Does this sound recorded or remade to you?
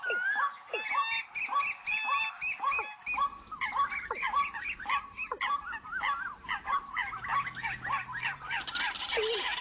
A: recorded